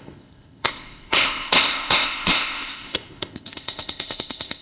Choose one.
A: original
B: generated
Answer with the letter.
B